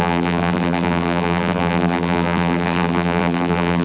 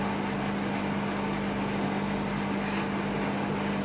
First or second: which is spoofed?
first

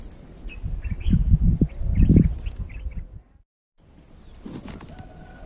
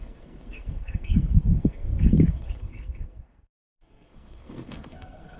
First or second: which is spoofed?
second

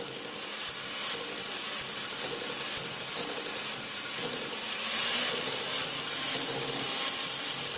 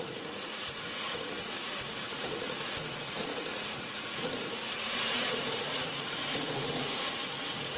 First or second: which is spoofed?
second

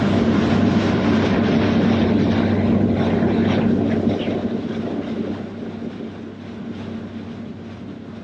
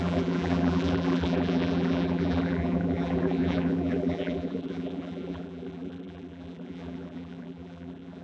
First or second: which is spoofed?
second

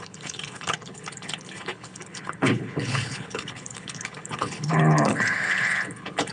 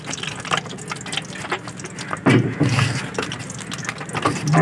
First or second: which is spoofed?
first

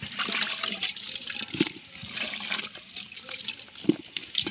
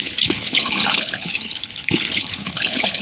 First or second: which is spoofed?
second